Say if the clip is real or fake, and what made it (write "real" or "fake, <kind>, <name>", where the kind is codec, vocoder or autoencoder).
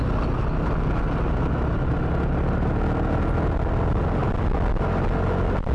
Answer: real